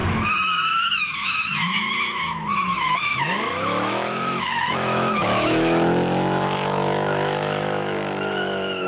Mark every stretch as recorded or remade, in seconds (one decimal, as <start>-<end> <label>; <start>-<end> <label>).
0.0-8.9 remade